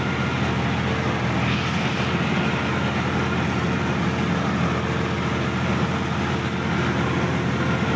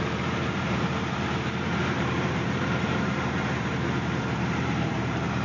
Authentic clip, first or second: first